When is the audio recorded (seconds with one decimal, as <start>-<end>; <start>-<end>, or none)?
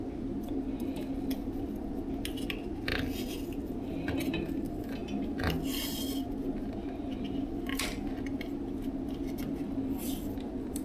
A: 0.0-10.8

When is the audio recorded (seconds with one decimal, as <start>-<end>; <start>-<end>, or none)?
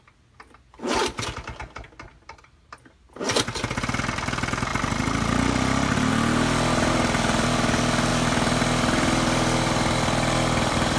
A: 0.0-8.1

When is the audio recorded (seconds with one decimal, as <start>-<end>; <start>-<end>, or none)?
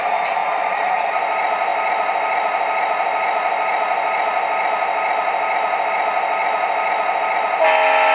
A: 0.0-0.4; 1.1-8.1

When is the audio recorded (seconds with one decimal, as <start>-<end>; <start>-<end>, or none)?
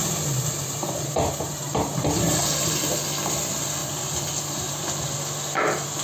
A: 3.8-4.4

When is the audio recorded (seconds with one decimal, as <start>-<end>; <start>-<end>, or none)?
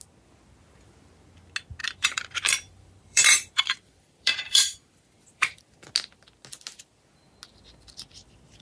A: 0.0-1.8; 5.6-8.6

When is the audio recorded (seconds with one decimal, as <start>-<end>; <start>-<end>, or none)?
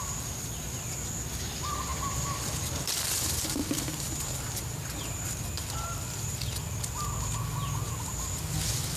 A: 0.0-9.0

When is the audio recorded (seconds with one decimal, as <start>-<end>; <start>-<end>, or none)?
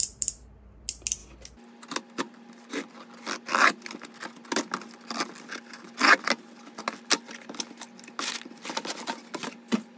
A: 0.0-10.0